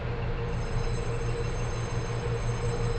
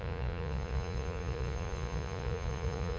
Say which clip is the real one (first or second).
first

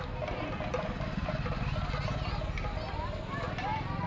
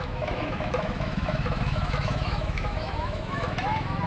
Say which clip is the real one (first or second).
first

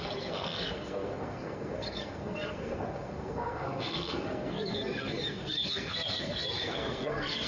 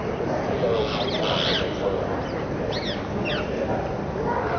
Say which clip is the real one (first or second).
second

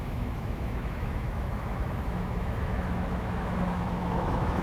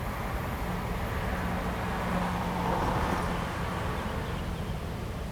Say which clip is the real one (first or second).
second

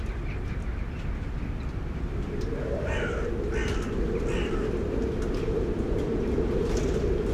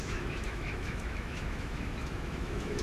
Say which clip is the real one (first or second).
first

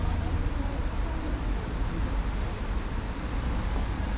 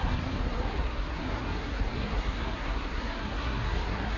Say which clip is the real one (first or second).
first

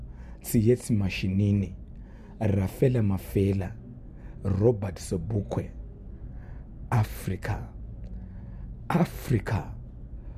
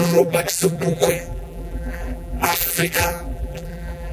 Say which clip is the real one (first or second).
first